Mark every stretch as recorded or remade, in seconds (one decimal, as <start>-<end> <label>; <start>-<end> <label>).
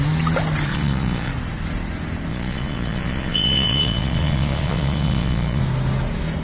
0.0-0.7 recorded; 0.7-1.3 remade; 1.3-2.3 recorded; 2.3-5.6 remade; 5.6-6.4 recorded